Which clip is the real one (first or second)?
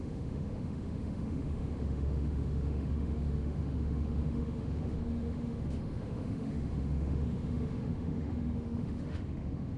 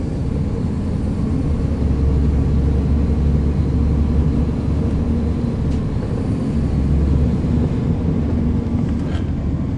second